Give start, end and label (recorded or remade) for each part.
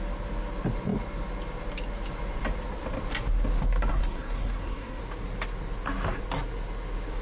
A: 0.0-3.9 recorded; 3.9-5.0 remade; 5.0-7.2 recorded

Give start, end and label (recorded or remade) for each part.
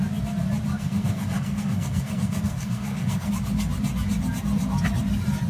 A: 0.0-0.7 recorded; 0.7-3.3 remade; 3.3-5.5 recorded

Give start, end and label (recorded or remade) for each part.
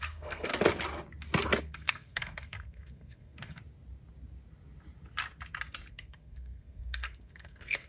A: 0.0-0.5 remade; 0.5-1.6 recorded; 1.6-3.6 remade; 3.6-5.9 recorded; 5.9-7.9 remade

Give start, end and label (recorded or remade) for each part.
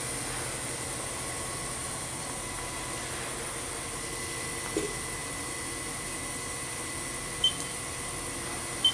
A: 0.0-8.9 recorded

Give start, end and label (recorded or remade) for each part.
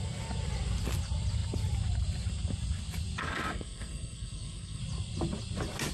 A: 0.0-3.2 recorded; 3.2-4.8 remade; 4.8-5.9 recorded